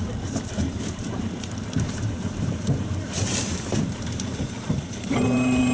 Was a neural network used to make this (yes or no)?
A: yes